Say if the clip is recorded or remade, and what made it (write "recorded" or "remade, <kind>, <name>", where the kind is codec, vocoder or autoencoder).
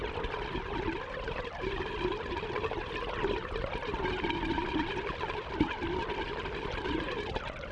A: recorded